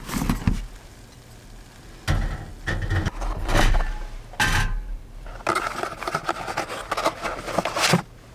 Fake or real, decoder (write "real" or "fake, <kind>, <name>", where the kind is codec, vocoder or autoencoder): real